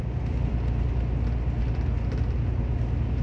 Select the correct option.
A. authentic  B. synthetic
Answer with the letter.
A